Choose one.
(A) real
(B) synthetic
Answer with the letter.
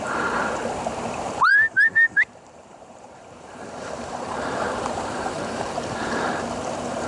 B